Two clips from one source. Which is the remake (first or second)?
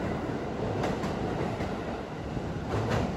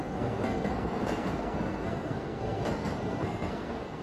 second